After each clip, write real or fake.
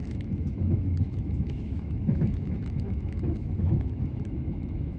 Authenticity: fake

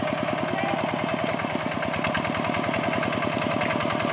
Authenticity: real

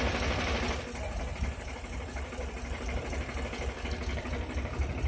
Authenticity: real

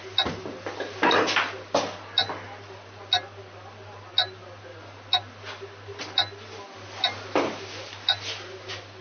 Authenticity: real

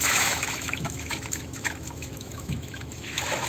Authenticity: fake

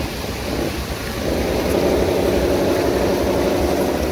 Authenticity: real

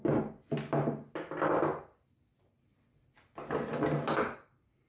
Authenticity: real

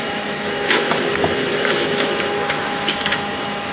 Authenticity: fake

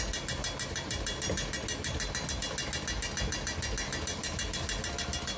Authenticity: real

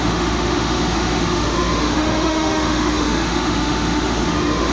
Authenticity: fake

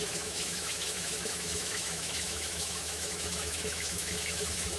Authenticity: fake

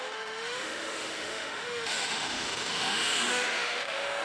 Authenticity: fake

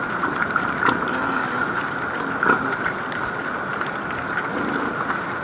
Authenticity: real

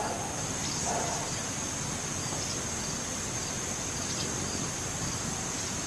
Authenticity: real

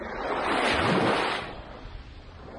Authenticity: real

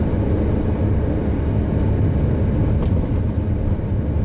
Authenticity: real